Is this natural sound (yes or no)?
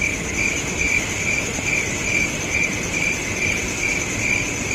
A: yes